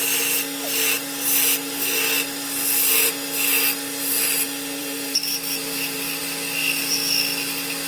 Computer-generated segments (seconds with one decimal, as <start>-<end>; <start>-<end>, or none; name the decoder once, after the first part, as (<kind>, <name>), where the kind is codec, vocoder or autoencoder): 4.8-6.2 (vocoder, BigVGAN v2)